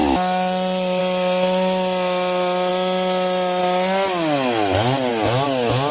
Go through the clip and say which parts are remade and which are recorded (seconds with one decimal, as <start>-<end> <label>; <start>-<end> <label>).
0.0-5.9 recorded